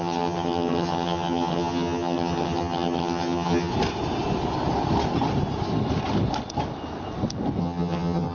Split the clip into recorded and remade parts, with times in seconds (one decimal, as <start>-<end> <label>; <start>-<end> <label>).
0.0-3.7 remade; 3.7-7.6 recorded; 7.6-8.3 remade